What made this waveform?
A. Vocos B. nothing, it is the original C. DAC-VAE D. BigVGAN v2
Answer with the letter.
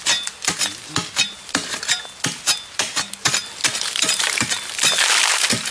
B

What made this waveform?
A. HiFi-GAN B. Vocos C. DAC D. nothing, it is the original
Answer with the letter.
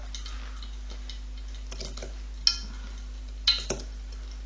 D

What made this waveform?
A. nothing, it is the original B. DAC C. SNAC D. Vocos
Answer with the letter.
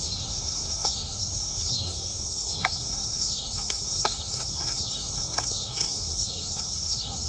C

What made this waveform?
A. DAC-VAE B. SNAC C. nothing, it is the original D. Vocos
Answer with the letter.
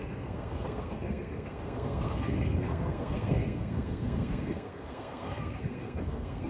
B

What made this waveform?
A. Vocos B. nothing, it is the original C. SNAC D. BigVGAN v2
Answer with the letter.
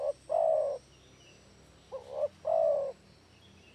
B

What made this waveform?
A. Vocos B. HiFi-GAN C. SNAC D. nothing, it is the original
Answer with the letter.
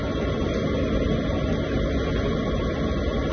D